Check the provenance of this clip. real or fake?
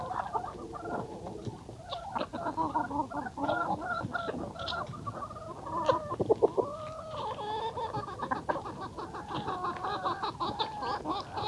real